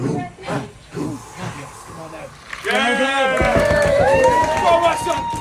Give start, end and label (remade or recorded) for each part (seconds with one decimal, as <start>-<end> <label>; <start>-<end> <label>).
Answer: 0.0-3.5 recorded; 3.5-4.4 remade; 4.4-5.4 recorded